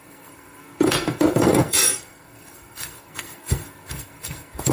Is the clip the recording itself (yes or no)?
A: no